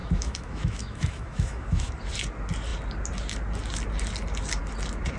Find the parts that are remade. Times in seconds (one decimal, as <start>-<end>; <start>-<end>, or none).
0.0-1.9